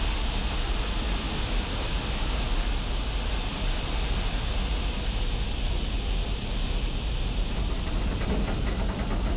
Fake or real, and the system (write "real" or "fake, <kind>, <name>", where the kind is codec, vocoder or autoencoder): real